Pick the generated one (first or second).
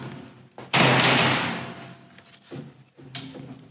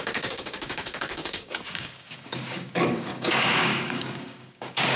second